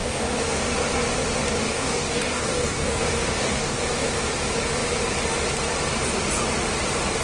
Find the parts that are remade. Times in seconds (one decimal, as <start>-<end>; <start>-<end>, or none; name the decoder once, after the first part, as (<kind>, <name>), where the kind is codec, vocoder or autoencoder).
0.0-0.6 (codec, DAC); 1.6-3.8